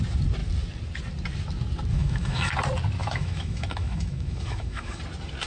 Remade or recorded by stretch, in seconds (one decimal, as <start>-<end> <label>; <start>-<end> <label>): 0.0-1.9 recorded; 1.9-2.5 remade; 2.5-3.0 recorded; 3.0-5.0 remade; 5.0-5.5 recorded